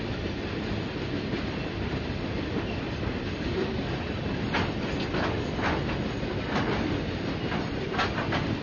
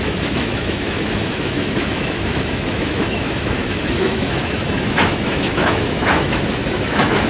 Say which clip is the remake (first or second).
second